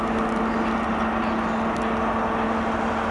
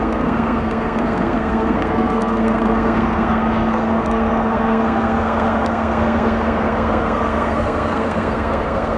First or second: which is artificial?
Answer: second